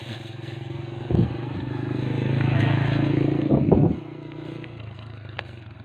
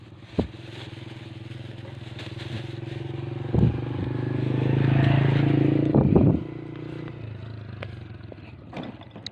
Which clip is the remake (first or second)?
first